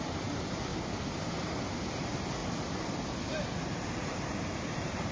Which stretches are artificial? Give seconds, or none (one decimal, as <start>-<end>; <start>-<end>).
0.0-0.7; 1.3-2.4; 3.3-5.1